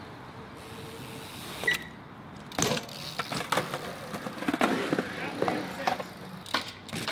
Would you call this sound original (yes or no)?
yes